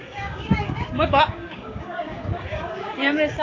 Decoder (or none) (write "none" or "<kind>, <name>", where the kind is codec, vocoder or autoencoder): codec, DAC